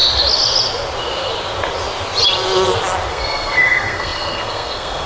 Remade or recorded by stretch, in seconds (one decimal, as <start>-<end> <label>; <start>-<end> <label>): 0.0-3.1 recorded; 3.1-5.1 remade